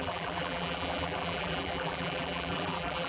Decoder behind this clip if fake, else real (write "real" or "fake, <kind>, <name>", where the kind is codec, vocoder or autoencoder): fake, vocoder, BigVGAN v2